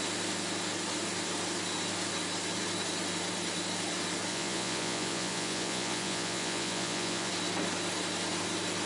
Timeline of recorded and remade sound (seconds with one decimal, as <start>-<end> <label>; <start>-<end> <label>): 0.0-4.3 recorded; 4.3-7.3 remade; 7.3-8.9 recorded